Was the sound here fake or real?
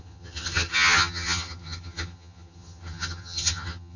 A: fake